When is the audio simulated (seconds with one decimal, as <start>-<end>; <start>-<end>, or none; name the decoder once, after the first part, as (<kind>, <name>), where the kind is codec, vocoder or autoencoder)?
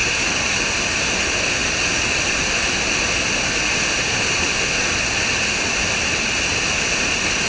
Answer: none